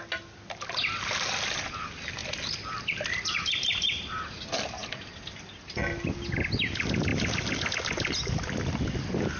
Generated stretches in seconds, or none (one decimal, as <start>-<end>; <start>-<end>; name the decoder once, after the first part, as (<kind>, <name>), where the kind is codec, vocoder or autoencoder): 2.2-4.0 (vocoder, BigVGAN v2)